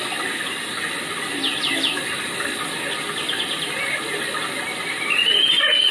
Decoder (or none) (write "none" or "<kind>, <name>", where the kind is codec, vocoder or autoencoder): none